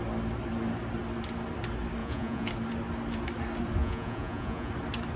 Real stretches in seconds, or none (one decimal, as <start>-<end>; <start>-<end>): 0.0-2.0; 2.5-3.8; 4.7-5.2